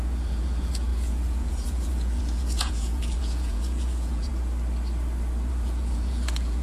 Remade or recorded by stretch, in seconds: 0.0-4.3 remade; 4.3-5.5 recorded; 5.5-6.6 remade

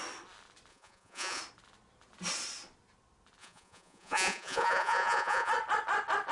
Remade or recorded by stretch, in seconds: 0.0-0.7 recorded; 0.7-1.4 remade; 1.4-3.4 recorded; 3.4-5.5 remade; 5.5-6.3 recorded

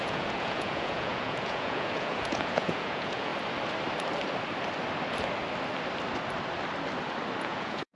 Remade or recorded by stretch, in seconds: 0.0-3.3 remade; 3.3-7.4 recorded; 7.4-8.0 remade

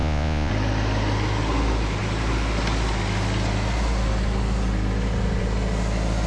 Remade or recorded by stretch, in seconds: 0.0-0.5 remade; 0.5-6.3 recorded

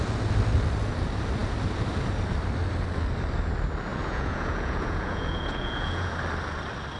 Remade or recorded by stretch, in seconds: 0.0-3.9 recorded; 3.9-6.1 remade; 6.1-7.0 recorded

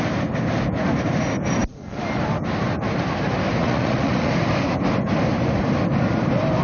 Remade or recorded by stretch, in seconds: 0.0-3.6 recorded; 3.6-4.3 remade; 4.3-6.6 recorded

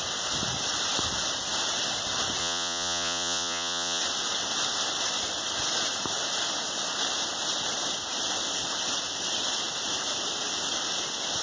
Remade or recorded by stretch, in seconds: 0.0-2.4 recorded; 2.4-4.0 remade; 4.0-11.4 recorded